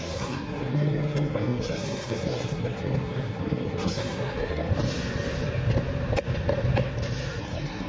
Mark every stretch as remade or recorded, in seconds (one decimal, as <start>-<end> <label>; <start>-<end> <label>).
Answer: 0.0-4.7 remade; 4.7-7.4 recorded; 7.4-7.9 remade